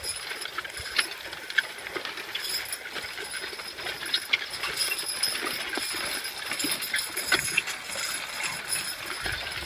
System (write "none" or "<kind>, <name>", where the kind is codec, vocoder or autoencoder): none